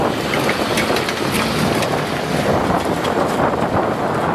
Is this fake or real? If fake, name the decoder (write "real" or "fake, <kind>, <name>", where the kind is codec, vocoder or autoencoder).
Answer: real